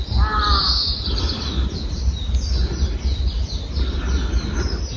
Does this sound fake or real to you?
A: real